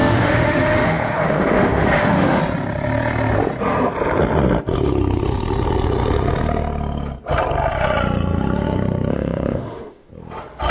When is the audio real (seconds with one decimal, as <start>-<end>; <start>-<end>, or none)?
2.4-9.1; 10.1-10.7